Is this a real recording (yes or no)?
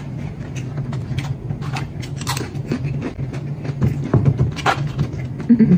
yes